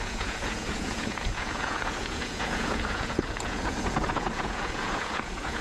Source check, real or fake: fake